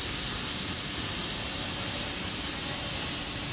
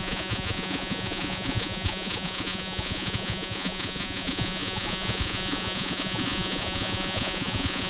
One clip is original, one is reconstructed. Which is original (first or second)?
first